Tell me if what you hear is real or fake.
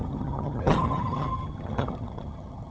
fake